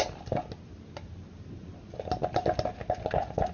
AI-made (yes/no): no